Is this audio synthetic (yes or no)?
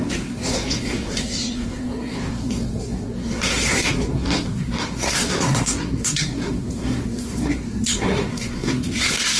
yes